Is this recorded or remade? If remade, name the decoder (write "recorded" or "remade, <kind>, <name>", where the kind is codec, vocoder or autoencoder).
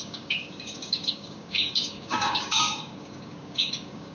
remade, codec, DAC